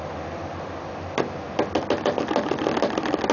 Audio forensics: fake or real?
real